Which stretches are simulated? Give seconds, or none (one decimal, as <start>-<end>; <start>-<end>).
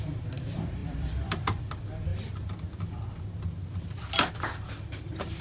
0.0-2.1; 4.3-5.4